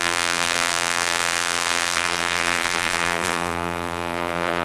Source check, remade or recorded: remade